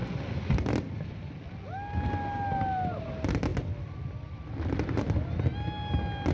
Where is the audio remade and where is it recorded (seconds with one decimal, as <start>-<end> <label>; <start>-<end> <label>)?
0.0-6.3 recorded